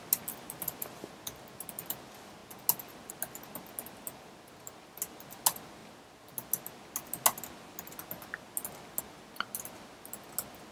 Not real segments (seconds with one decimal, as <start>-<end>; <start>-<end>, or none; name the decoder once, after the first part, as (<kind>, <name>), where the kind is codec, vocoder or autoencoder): none